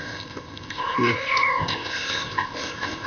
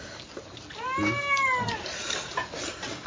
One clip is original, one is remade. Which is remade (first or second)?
first